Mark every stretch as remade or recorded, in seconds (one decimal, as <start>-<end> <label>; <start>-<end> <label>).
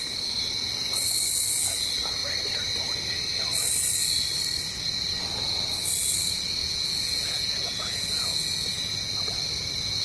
0.0-6.6 recorded; 6.6-8.8 remade; 8.8-10.0 recorded